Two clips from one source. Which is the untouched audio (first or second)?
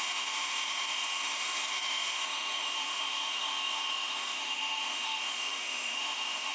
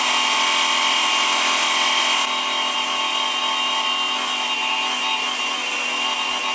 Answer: second